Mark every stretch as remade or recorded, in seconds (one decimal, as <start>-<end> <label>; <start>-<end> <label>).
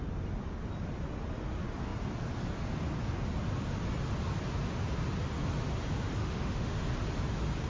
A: 0.0-6.2 recorded; 6.2-6.8 remade; 6.8-7.7 recorded